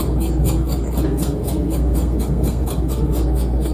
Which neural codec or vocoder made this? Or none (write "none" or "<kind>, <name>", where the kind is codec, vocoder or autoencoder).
codec, SNAC